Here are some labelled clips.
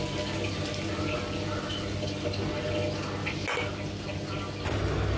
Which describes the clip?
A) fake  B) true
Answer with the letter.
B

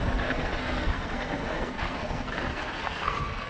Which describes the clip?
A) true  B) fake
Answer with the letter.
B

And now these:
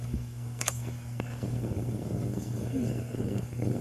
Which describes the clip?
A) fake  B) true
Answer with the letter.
A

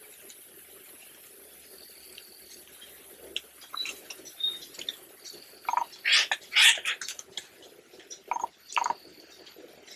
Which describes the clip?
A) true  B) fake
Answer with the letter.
A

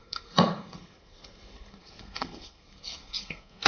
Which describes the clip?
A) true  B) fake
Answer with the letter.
B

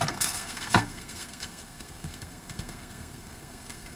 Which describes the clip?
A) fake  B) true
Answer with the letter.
A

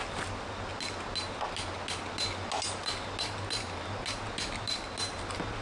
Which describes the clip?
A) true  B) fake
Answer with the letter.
A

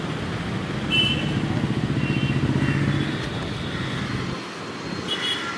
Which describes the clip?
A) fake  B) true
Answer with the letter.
B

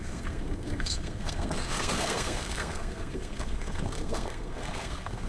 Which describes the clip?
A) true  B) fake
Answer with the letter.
B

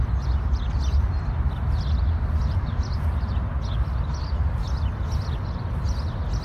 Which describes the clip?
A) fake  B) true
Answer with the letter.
B